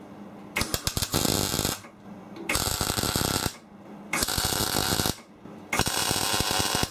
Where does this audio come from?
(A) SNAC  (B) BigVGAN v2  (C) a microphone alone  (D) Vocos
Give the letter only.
C